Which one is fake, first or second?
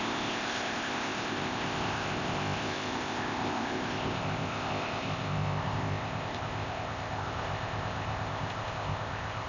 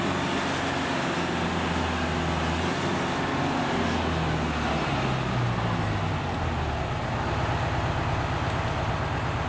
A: first